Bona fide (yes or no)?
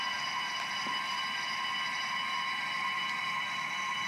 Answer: yes